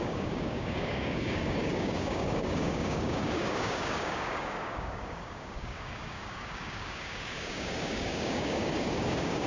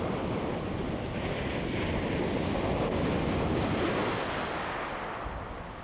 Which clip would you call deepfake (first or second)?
first